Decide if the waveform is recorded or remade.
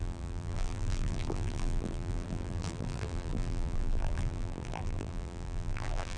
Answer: remade